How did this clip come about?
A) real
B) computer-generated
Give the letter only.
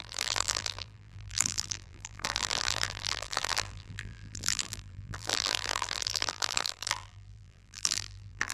B